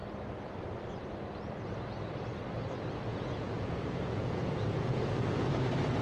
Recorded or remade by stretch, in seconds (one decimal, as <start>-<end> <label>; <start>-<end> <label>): 0.0-3.1 recorded; 3.1-5.5 remade; 5.5-6.0 recorded